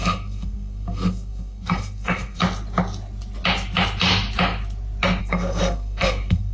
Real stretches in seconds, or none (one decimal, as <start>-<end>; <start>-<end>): 2.4-5.2